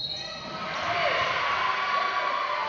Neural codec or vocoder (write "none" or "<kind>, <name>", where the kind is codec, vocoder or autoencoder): none